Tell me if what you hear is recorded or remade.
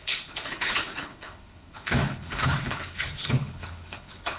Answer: remade